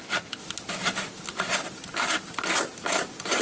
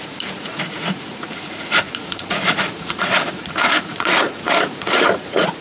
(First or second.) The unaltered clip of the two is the first